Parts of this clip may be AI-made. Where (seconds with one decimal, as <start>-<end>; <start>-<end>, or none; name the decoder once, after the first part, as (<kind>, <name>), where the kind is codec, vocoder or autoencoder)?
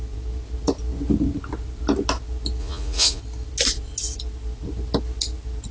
2.6-3.2 (vocoder, Vocos)